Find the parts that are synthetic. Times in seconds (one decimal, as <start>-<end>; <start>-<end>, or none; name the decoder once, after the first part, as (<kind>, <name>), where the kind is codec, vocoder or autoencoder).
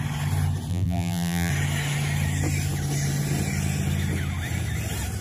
0.7-1.5 (vocoder, BigVGAN v2)